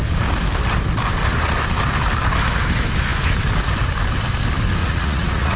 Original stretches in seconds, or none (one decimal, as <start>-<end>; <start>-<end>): 0.0-4.8